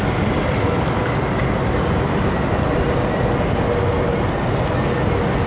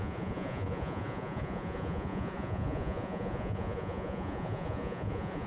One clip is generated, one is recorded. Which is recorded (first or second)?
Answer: first